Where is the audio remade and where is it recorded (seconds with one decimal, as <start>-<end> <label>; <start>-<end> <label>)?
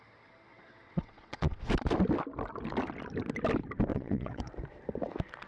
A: 0.0-0.5 recorded; 0.5-1.6 remade; 1.6-3.9 recorded; 3.9-4.5 remade; 4.5-5.5 recorded